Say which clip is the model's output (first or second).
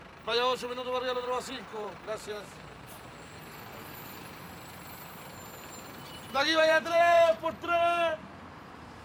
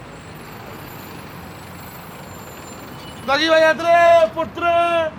first